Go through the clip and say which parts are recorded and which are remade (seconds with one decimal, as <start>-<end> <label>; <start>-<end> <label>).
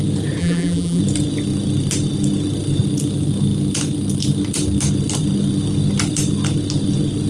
0.0-0.4 recorded; 0.4-1.0 remade; 1.0-7.3 recorded